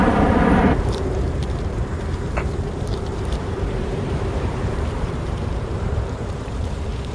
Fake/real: fake